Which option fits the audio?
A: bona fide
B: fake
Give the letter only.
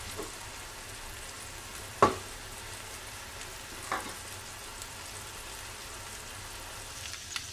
A